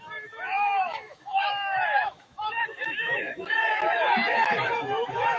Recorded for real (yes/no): no